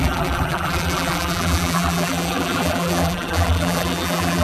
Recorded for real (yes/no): no